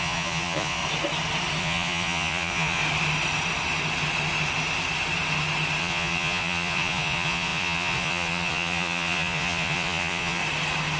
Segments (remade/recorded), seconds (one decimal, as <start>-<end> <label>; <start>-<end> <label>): 0.0-0.8 remade; 0.8-1.6 recorded; 1.6-2.8 remade; 2.8-5.8 recorded; 5.8-10.4 remade; 10.4-11.0 recorded